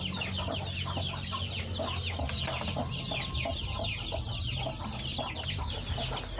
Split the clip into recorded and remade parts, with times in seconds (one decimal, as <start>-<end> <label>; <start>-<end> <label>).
0.0-6.4 recorded